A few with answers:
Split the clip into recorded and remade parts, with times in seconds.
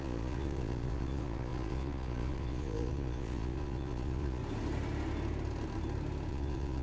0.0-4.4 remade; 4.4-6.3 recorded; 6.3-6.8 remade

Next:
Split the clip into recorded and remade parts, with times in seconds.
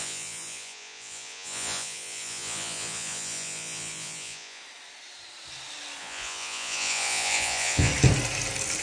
0.0-4.6 remade; 4.6-6.0 recorded; 6.0-7.9 remade; 7.9-8.8 recorded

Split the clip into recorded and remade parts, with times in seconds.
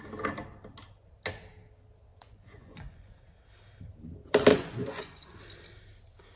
0.0-2.1 recorded; 2.1-3.2 remade; 3.2-4.5 recorded; 4.5-5.4 remade; 5.4-6.4 recorded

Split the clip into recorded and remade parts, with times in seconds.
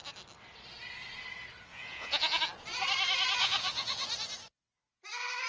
0.0-1.7 recorded; 1.7-2.4 remade; 2.4-3.4 recorded; 3.4-4.1 remade; 4.1-5.5 recorded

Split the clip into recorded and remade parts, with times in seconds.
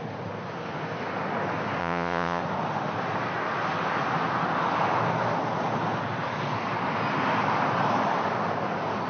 0.0-1.8 recorded; 1.8-2.4 remade; 2.4-9.1 recorded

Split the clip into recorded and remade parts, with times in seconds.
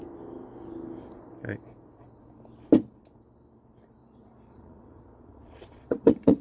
0.0-4.0 recorded; 4.0-6.4 remade